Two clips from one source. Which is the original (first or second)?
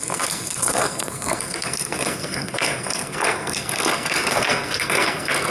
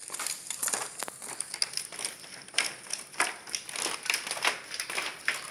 second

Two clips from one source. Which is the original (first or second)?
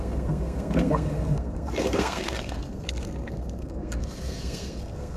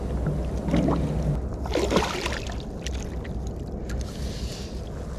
second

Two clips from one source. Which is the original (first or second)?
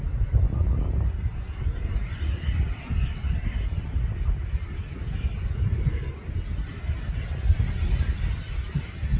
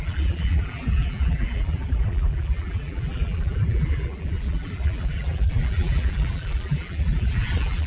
first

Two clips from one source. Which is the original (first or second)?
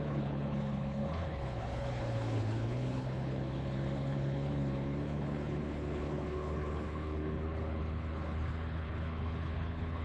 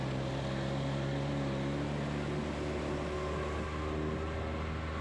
second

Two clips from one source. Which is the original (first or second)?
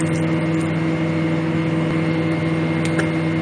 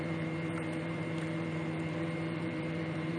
first